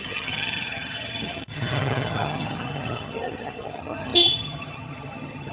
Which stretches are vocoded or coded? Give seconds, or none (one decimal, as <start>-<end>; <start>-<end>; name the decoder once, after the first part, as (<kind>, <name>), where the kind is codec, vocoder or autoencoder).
0.0-5.5 (vocoder, HiFi-GAN)